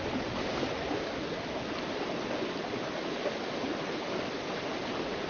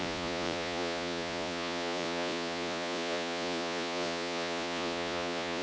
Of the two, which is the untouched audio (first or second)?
first